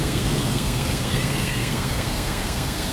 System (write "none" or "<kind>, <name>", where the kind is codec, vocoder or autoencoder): codec, SNAC